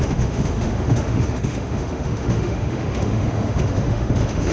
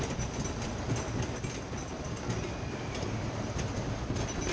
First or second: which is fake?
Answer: first